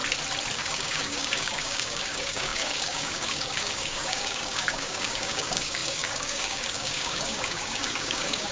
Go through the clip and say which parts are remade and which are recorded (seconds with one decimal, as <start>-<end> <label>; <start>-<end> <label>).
0.0-0.5 recorded; 0.5-8.5 remade